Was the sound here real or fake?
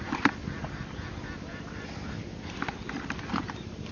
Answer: real